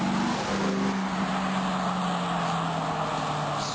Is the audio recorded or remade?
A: recorded